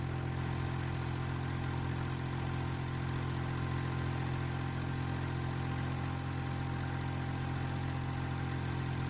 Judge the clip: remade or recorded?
recorded